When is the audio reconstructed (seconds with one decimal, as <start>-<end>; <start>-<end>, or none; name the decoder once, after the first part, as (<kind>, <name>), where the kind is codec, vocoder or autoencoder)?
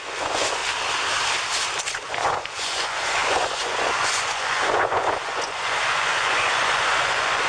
0.0-0.6 (vocoder, Vocos); 1.9-7.5